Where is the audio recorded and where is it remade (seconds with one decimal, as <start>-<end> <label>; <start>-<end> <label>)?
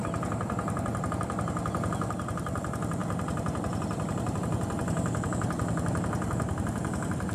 0.0-7.3 recorded